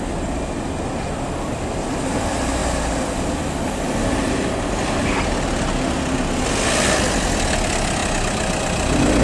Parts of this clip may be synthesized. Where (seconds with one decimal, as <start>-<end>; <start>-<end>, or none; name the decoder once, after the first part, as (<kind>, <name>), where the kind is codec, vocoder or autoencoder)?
none